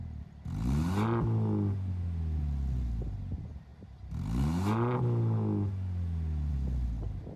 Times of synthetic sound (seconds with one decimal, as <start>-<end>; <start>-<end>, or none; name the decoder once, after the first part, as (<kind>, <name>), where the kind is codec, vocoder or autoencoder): none